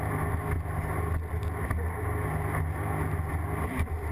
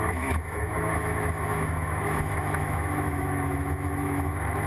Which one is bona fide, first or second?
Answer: first